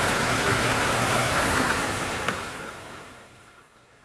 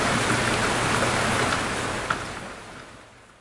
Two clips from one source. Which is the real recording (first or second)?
second